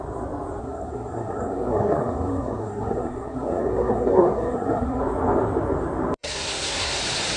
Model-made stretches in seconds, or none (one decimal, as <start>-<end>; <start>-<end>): 0.6-5.0; 6.2-7.0